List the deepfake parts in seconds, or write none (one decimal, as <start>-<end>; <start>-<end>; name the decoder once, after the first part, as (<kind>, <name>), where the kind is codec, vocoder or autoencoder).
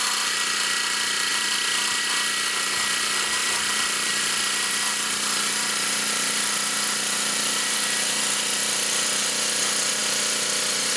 1.3-2.0 (vocoder, BigVGAN v2); 3.4-4.1